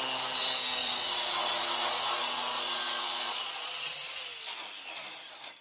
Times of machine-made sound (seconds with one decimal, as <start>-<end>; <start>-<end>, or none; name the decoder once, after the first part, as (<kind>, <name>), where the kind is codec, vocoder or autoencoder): 0.8-4.2 (vocoder, Vocos)